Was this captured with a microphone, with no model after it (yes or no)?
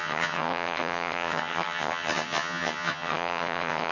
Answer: no